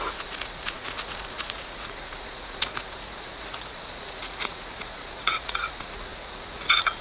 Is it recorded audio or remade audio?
remade